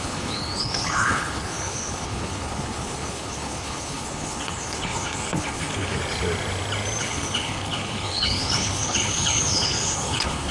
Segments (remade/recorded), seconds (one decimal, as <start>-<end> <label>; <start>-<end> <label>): 0.0-6.0 remade; 6.0-7.0 recorded; 7.0-10.5 remade